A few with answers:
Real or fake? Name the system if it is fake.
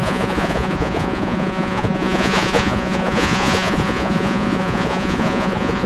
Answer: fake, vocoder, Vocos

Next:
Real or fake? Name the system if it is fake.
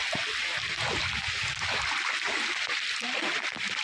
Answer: real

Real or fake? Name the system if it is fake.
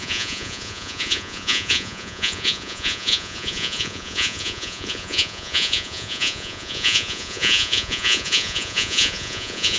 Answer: fake, vocoder, Vocos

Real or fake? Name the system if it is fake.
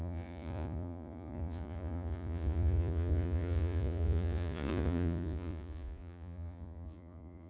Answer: fake, vocoder, Vocos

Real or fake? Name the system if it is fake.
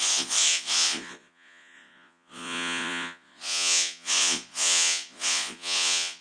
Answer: fake, vocoder, Vocos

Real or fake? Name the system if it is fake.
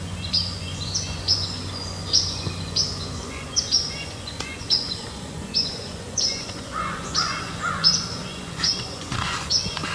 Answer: fake, vocoder, Vocos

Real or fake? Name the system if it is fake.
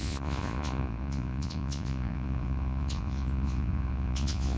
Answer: fake, vocoder, Vocos